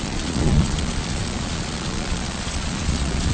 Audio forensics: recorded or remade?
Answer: remade